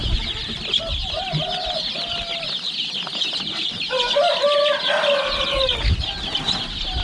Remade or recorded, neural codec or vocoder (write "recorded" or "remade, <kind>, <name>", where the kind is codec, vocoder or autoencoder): recorded